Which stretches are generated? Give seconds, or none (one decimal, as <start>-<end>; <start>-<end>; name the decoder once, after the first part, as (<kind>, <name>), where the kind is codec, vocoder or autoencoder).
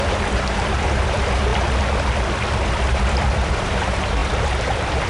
0.0-1.5 (vocoder, BigVGAN v2); 2.9-5.1